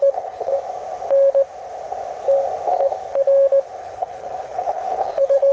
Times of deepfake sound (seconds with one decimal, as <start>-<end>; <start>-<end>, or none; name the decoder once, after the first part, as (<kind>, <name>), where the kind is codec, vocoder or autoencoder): 0.0-0.5 (codec, HILCodec); 3.8-5.5